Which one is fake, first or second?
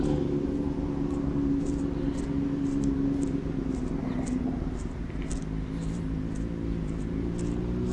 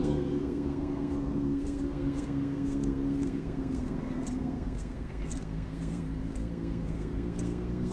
second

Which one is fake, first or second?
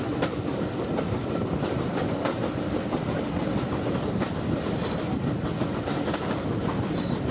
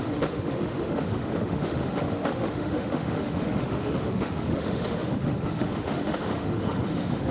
second